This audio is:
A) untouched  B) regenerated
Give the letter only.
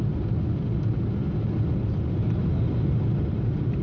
A